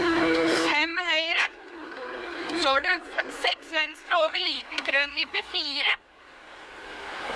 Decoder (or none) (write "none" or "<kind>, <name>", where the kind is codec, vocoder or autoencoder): codec, SNAC